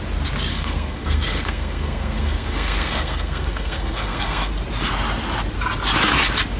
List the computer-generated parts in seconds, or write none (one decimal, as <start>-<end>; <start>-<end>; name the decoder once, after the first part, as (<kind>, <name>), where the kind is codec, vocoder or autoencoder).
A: 0.5-4.5 (codec, SNAC)